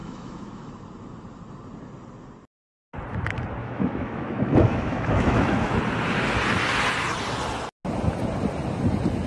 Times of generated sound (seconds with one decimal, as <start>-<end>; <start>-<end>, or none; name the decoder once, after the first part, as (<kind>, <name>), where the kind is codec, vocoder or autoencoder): 0.0-0.7 (autoencoder, DAC-VAE); 3.6-5.8